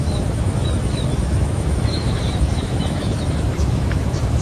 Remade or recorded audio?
remade